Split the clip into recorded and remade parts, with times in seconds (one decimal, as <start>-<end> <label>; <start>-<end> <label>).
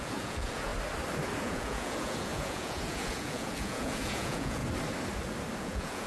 0.0-0.7 remade; 0.7-1.4 recorded; 1.4-4.6 remade; 4.6-5.6 recorded; 5.6-6.1 remade